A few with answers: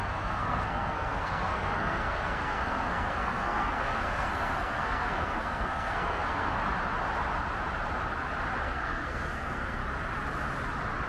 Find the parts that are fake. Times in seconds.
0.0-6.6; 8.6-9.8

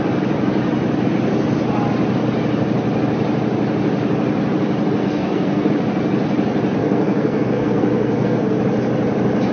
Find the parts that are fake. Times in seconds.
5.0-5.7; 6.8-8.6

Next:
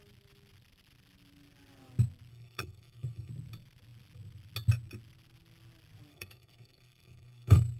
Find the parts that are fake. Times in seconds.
2.3-3.3; 6.1-7.8